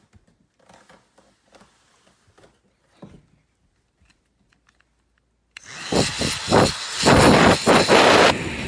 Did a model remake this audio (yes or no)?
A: no